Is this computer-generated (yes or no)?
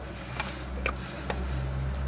no